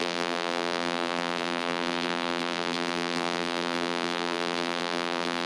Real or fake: fake